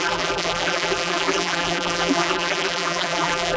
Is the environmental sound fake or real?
fake